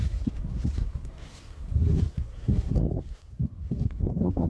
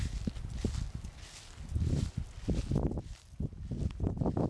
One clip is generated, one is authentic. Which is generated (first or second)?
first